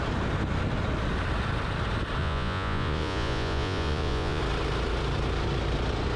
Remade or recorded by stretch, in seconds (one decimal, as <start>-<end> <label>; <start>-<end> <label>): 0.0-2.2 recorded; 2.2-4.4 remade; 4.4-6.2 recorded